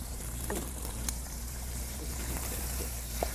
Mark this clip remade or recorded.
remade